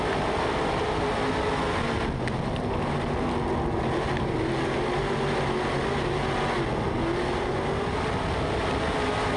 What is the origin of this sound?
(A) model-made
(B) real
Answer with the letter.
B